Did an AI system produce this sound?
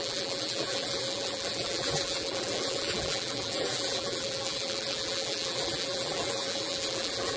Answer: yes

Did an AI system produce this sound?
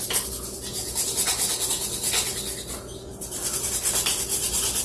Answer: no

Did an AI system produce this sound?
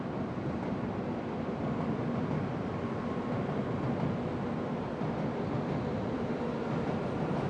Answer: yes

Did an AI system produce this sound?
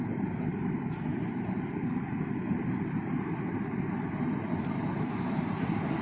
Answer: yes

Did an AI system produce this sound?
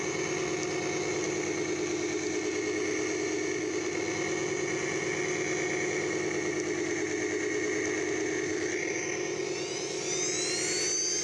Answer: no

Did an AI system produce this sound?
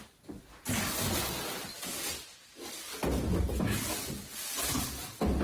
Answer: no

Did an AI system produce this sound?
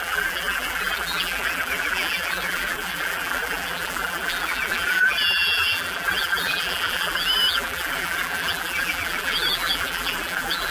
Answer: yes